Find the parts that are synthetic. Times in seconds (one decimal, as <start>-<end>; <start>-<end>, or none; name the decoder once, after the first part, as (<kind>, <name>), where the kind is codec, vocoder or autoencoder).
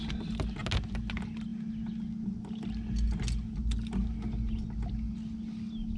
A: none